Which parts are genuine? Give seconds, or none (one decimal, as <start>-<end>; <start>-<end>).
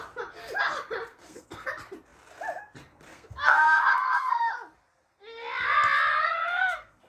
0.0-1.1; 1.7-3.1; 4.5-6.1